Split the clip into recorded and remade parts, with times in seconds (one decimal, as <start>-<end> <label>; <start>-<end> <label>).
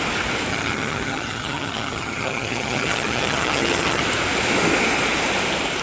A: 0.0-0.5 recorded; 0.5-4.0 remade; 4.0-5.8 recorded